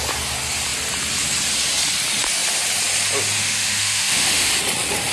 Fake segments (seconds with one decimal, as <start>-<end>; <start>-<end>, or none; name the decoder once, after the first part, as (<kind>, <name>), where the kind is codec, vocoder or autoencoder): 3.4-4.5 (autoencoder, DAC-VAE)